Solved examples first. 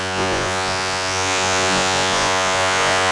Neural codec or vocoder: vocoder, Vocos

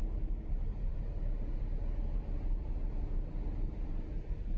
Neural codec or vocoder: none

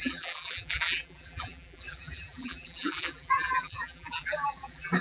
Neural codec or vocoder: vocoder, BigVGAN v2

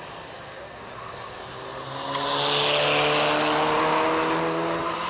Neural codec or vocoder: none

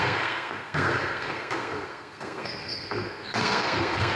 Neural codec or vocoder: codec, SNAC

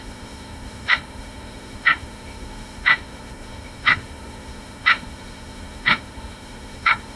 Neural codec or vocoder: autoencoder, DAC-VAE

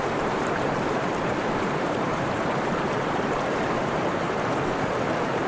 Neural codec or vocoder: vocoder, BigVGAN v2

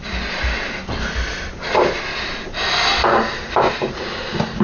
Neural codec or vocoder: none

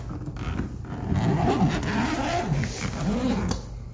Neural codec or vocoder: none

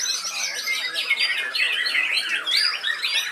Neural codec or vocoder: none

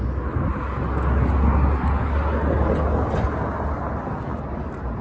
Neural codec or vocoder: none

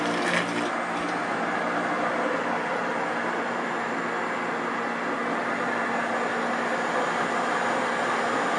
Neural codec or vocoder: none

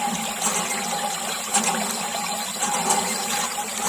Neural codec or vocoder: none